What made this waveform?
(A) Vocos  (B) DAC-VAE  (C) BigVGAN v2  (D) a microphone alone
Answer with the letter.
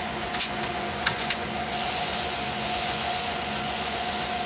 A